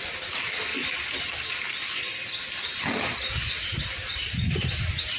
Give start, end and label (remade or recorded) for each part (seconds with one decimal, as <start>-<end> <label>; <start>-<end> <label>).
0.0-5.2 recorded